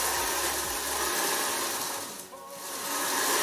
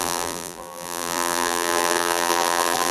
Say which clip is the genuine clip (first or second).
first